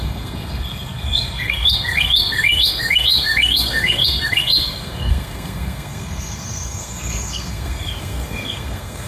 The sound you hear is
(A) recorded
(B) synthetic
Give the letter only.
B